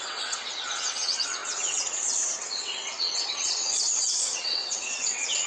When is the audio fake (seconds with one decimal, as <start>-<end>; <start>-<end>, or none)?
0.0-5.5